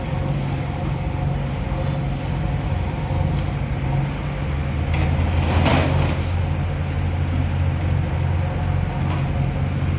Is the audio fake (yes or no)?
no